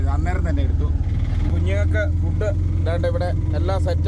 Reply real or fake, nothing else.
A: real